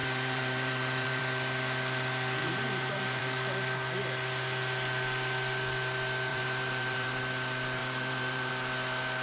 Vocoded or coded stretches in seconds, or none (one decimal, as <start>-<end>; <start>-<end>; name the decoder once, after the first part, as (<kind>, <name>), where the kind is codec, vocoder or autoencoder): 0.0-1.2 (vocoder, BigVGAN v2); 2.4-3.2; 6.3-7.2; 7.8-8.5